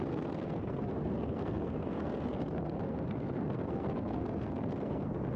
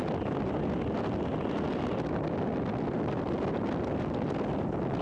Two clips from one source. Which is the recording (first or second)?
second